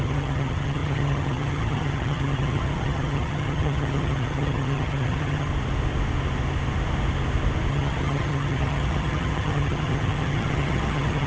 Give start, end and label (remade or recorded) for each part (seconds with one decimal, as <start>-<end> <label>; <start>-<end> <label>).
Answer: 0.0-5.5 remade; 5.5-7.7 recorded; 7.7-11.3 remade

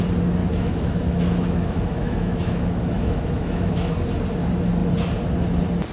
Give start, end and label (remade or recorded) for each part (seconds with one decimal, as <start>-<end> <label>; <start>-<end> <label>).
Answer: 0.0-0.4 recorded; 0.4-3.9 remade; 3.9-5.9 recorded

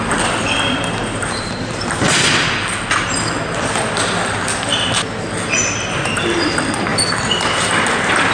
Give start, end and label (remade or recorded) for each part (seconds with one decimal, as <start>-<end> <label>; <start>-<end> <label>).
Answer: 0.0-8.3 recorded

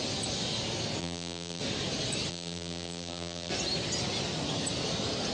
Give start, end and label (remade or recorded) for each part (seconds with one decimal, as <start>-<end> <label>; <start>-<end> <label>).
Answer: 0.0-1.0 recorded; 1.0-1.6 remade; 1.6-2.3 recorded; 2.3-3.5 remade; 3.5-5.3 recorded

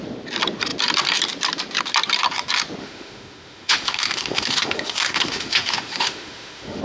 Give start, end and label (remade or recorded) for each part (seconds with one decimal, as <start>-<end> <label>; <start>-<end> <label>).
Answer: 0.0-2.8 recorded; 2.8-6.8 remade